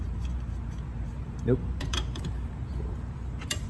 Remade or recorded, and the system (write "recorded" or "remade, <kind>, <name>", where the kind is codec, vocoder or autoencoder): remade, vocoder, BigVGAN v2